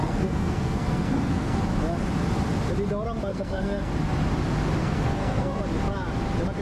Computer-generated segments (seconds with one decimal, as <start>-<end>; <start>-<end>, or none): 0.0-1.6; 3.3-3.9; 4.8-5.6